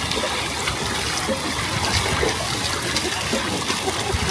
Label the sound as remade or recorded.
recorded